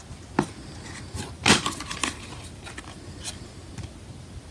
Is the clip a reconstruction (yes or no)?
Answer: no